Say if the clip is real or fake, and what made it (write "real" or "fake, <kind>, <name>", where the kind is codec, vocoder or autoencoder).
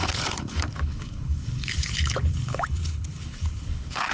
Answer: fake, codec, HILCodec